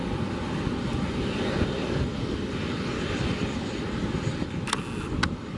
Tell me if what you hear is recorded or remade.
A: recorded